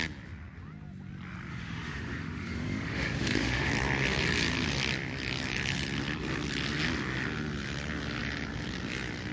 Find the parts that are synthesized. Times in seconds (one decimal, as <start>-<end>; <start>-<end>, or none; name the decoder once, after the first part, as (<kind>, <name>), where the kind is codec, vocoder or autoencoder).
1.5-3.7 (autoencoder, DAC-VAE)